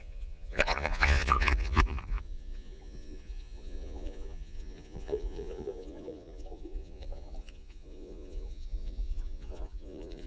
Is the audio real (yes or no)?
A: no